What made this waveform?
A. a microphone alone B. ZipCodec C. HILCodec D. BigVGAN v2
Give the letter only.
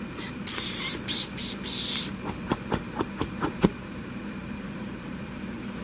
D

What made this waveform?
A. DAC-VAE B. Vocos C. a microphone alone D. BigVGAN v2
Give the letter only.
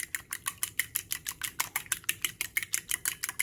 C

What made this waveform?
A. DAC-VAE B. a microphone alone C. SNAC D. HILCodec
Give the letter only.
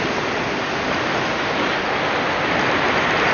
B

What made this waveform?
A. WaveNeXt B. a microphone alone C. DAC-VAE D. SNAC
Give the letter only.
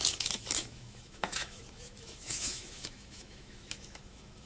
C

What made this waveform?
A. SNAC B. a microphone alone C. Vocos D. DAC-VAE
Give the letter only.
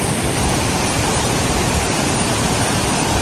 B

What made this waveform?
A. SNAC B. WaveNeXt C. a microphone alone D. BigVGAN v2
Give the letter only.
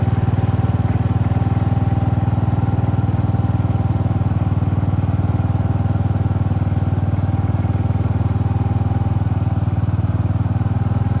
C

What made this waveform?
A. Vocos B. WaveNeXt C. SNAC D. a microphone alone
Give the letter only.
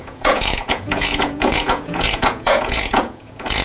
A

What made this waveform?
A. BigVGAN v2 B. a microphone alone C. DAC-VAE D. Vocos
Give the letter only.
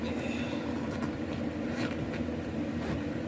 B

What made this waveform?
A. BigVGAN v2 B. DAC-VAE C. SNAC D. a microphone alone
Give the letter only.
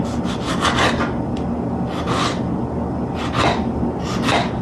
D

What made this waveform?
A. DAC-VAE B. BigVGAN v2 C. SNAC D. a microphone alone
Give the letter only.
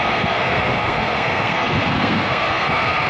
C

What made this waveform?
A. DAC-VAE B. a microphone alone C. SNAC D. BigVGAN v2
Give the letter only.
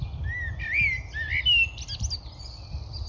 B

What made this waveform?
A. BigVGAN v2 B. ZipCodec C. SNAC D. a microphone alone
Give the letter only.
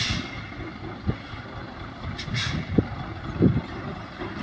A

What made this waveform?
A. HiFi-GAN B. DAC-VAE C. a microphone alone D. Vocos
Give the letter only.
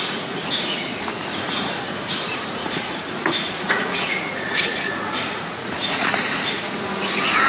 D